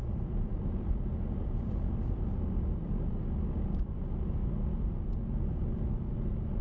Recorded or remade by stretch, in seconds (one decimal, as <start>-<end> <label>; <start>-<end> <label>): 0.0-6.6 recorded

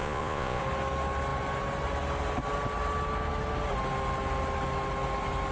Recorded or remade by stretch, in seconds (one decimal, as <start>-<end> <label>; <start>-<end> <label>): 0.0-0.6 remade; 0.6-5.5 recorded

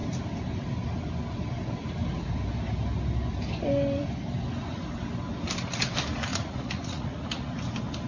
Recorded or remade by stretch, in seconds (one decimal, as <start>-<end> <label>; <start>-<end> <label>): 0.0-6.3 recorded; 6.3-7.5 remade; 7.5-8.1 recorded

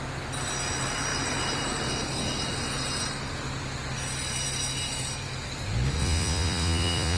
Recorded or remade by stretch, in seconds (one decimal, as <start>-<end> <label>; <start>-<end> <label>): 0.0-6.0 recorded; 6.0-7.2 remade

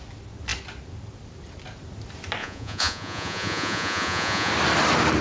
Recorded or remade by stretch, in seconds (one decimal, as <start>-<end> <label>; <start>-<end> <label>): 0.0-2.4 recorded; 2.4-4.5 remade; 4.5-5.2 recorded